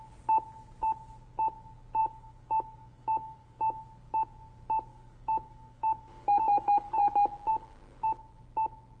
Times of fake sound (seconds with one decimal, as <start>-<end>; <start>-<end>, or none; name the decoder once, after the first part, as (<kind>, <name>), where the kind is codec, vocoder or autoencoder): 2.0-3.8 (codec, DAC); 4.9-7.1; 7.5-8.3